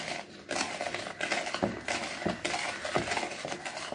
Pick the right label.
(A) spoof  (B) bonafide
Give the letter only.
B